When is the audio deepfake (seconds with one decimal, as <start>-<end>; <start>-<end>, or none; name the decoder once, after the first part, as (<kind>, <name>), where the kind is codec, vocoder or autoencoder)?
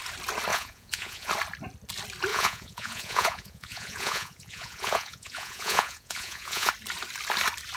0.5-1.3 (vocoder, Vocos); 2.3-6.7